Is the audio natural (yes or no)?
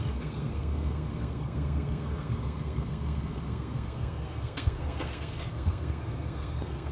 no